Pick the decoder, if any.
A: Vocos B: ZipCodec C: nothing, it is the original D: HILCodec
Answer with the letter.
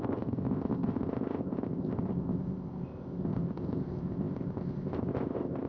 B